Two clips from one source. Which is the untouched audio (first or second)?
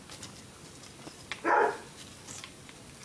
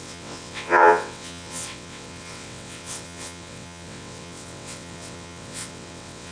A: first